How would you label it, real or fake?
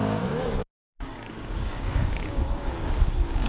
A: fake